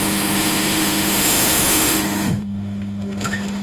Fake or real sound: fake